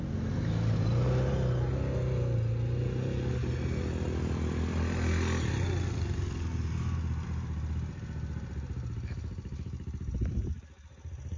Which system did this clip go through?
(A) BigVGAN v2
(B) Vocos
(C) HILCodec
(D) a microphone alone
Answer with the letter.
D